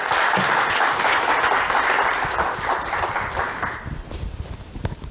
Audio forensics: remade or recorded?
recorded